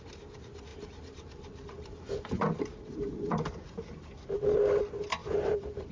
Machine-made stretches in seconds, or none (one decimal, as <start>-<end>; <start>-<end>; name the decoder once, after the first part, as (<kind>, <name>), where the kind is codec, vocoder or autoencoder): 0.7-4.2 (vocoder, BigVGAN v2); 5.2-5.9